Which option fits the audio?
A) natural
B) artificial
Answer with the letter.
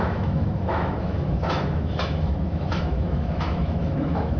B